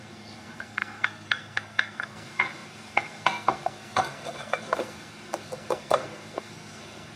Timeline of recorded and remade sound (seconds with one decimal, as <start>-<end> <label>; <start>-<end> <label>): 0.0-7.2 remade